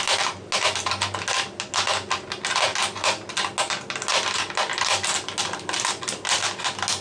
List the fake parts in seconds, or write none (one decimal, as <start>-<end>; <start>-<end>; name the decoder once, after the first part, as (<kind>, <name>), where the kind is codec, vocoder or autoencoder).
none